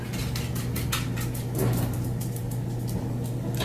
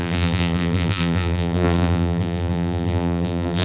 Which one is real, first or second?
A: first